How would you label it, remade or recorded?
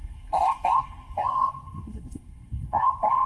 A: remade